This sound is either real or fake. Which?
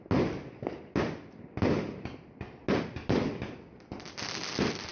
real